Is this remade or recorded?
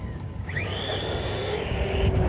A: remade